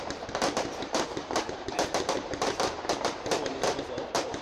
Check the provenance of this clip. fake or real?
fake